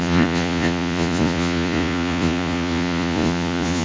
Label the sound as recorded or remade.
remade